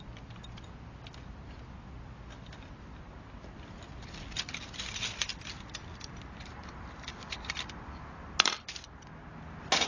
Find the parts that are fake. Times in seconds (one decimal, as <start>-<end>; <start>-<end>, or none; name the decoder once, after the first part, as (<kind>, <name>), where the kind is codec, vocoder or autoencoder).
none